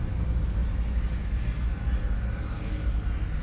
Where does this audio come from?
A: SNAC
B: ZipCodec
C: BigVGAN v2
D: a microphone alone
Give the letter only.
D